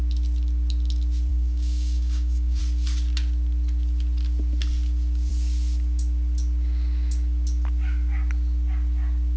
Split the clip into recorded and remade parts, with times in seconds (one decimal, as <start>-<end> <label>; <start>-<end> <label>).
0.0-1.3 recorded; 1.3-2.6 remade; 2.6-9.4 recorded